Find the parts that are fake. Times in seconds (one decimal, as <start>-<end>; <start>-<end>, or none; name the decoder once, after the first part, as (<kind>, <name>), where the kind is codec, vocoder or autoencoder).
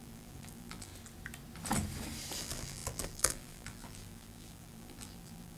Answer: 0.0-0.9 (vocoder, BigVGAN v2); 2.4-5.6